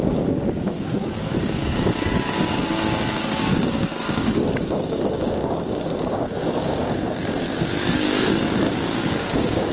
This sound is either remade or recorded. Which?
remade